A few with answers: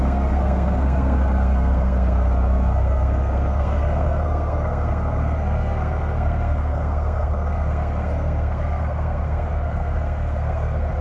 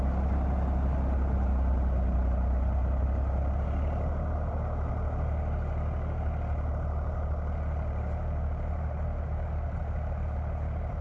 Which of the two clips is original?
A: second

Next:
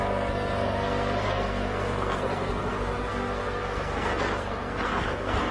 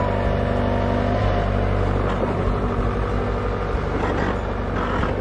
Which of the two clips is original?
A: second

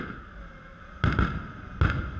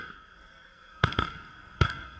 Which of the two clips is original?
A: first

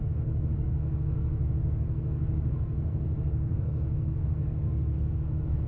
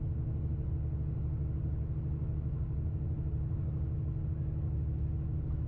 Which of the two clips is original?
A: second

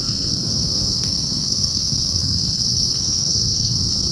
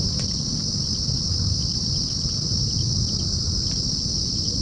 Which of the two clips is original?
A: second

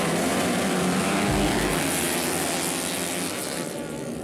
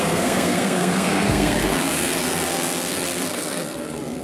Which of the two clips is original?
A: first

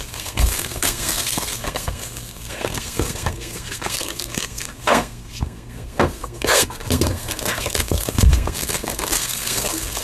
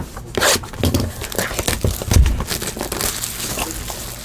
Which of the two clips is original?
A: second